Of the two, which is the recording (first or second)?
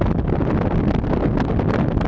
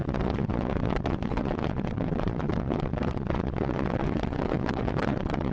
first